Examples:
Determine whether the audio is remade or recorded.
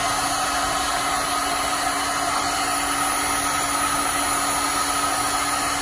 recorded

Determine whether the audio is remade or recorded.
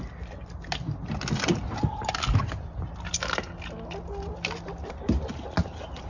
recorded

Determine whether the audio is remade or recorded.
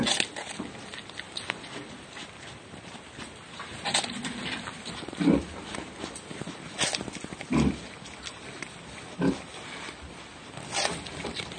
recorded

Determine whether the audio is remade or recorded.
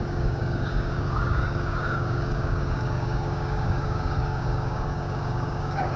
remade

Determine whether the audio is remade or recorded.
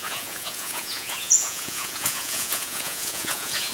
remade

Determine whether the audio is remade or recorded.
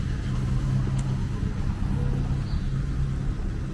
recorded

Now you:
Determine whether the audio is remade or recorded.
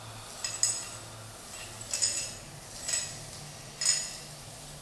recorded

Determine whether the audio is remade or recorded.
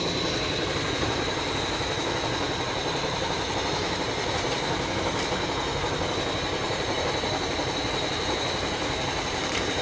remade